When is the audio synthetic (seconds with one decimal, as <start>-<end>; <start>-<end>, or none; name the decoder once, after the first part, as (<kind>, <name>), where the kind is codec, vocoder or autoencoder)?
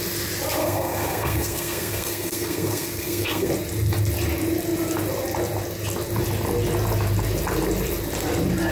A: 0.6-3.5 (codec, SNAC)